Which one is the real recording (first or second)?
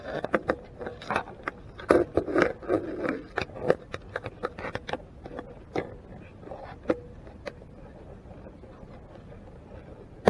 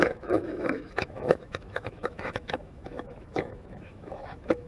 first